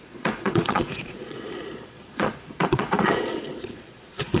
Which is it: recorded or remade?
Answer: remade